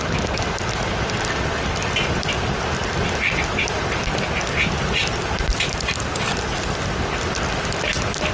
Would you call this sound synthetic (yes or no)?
no